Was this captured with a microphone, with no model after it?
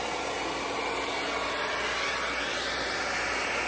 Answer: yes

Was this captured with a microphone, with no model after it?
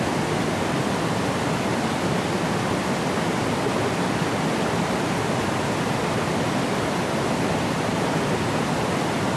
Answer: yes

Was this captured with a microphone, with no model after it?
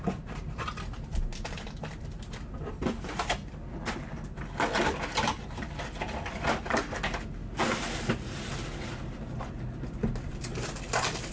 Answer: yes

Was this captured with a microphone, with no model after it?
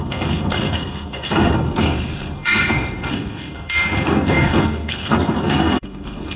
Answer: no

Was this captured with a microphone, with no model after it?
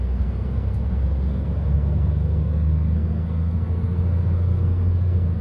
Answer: no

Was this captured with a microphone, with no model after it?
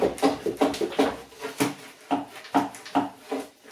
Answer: yes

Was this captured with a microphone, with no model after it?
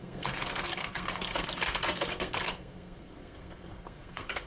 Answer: no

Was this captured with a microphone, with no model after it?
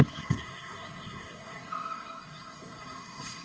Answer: no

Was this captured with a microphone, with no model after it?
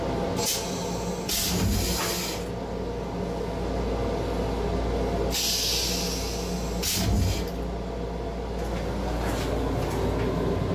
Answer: yes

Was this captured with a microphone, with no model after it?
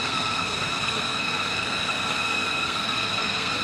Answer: no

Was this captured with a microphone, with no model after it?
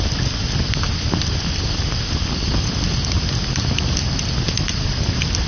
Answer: yes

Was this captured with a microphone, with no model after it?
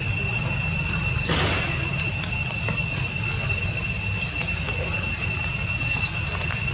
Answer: yes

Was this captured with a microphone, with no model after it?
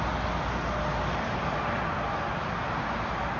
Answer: yes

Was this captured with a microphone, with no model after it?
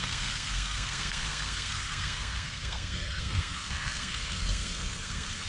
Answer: no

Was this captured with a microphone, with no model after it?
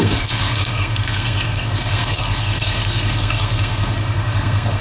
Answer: no